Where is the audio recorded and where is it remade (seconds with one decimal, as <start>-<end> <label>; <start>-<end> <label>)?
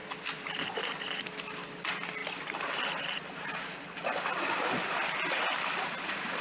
0.0-0.8 remade; 0.8-6.4 recorded